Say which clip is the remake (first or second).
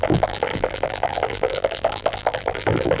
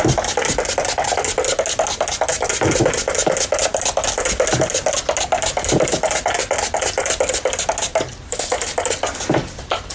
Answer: first